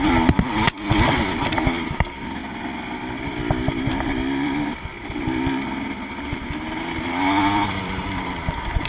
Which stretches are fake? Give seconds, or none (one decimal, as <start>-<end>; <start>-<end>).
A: 0.0-2.4; 7.0-8.9